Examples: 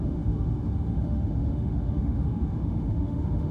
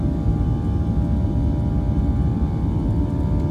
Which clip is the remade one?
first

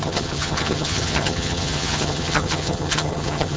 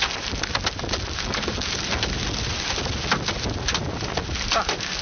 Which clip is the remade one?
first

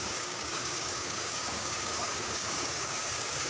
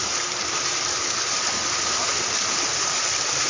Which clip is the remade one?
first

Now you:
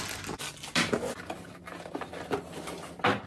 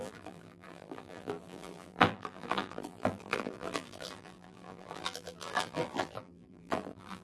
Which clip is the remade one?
second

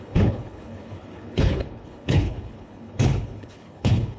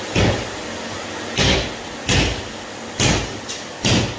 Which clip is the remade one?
first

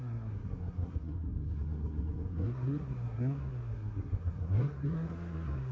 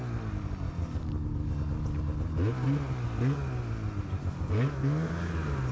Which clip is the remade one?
first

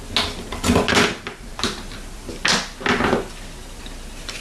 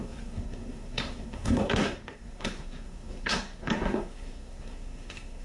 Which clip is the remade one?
second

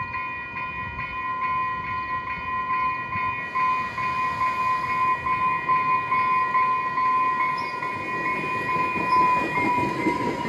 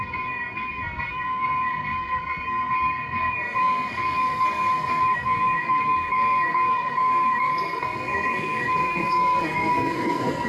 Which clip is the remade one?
second